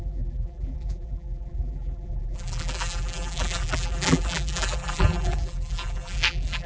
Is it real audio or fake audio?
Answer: fake